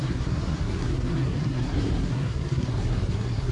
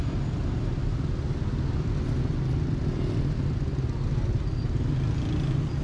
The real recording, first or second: second